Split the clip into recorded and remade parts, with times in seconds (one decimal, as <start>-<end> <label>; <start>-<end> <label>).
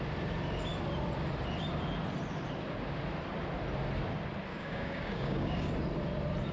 0.0-4.5 recorded; 4.5-5.7 remade; 5.7-6.5 recorded